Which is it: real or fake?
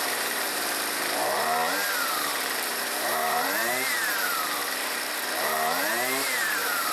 fake